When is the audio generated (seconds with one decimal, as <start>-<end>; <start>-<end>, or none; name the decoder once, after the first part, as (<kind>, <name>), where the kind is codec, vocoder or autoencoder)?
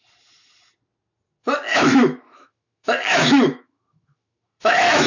1.7-5.1 (autoencoder, DAC-VAE)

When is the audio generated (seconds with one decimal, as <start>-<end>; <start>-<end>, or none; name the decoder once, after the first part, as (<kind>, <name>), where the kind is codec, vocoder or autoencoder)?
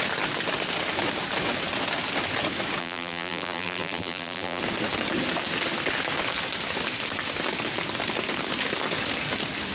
2.8-4.6 (vocoder, BigVGAN v2)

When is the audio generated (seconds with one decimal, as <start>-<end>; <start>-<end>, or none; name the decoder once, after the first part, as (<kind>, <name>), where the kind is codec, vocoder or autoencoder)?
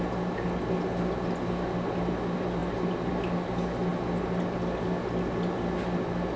none